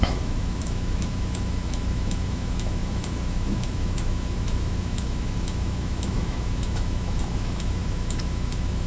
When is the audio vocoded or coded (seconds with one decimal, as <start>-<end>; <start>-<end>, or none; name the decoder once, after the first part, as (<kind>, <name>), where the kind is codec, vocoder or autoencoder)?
0.0-8.9 (autoencoder, DAC-VAE)